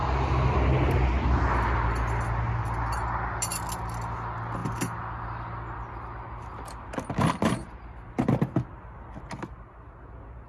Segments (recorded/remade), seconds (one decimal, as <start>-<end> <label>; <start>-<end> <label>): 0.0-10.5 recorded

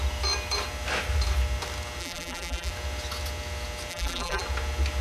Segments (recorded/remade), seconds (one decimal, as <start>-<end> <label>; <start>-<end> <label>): 0.0-2.0 recorded; 2.0-2.7 remade; 2.7-3.9 recorded; 3.9-4.4 remade; 4.4-5.0 recorded

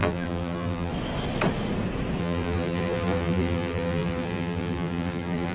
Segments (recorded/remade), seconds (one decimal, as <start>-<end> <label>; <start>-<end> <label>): 0.0-0.9 remade; 0.9-2.2 recorded; 2.2-5.5 remade

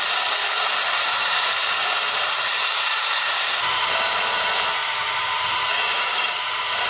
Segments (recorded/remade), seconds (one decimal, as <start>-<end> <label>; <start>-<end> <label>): 0.0-6.9 remade